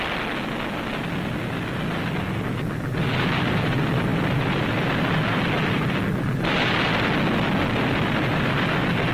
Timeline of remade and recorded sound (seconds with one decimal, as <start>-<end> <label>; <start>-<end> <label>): 0.0-9.1 recorded

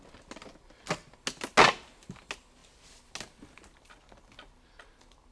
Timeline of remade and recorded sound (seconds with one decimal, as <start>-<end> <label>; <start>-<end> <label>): 0.0-5.3 recorded